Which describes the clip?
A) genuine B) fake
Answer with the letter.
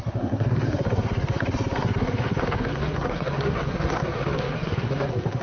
B